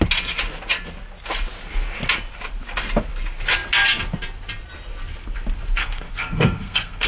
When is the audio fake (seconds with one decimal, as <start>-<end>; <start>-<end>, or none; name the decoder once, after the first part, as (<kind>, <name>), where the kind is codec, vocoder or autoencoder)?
5.8-7.1 (codec, SNAC)